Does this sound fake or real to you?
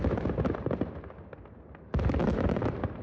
real